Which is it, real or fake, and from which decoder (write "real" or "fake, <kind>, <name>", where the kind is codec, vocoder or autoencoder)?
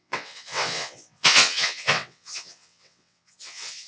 fake, vocoder, WaveNeXt